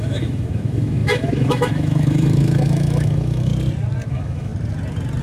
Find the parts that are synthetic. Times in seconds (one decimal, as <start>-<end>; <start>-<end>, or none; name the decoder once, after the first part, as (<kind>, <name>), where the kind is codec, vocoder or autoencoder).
0.0-3.5 (autoencoder, DAC-VAE); 4.1-4.5